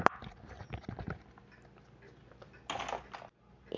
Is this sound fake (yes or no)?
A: no